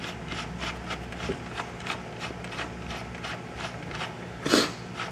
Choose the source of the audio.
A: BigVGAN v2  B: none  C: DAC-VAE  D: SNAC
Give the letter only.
B